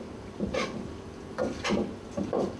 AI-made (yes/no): no